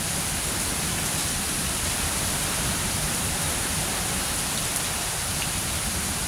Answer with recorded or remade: remade